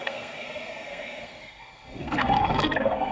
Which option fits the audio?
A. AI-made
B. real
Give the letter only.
A